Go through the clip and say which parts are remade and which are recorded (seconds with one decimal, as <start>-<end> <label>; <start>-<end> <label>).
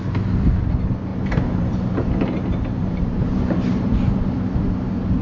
0.0-1.1 recorded; 1.1-4.2 remade; 4.2-5.2 recorded